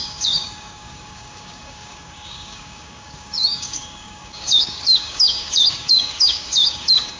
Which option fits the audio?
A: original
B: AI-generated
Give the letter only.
B